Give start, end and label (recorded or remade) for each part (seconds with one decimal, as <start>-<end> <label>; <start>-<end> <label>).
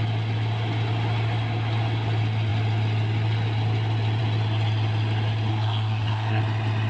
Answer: 0.0-5.5 recorded; 5.5-6.4 remade; 6.4-6.9 recorded